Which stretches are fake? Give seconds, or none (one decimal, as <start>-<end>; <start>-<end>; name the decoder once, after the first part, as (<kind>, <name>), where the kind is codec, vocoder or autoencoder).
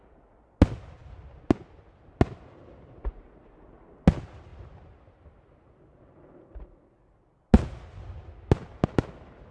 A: none